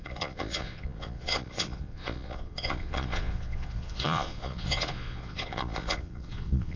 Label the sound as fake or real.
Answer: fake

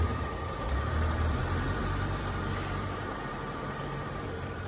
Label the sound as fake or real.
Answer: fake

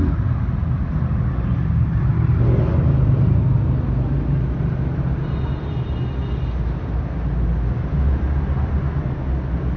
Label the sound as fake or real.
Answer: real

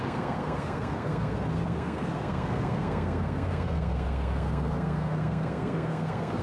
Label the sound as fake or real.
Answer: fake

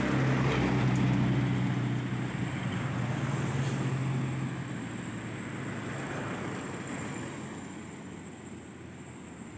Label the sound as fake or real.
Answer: real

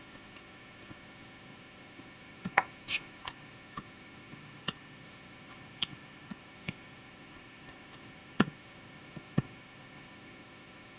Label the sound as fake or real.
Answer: fake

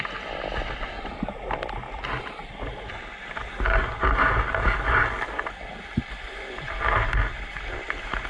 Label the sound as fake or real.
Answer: real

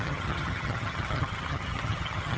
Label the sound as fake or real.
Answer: fake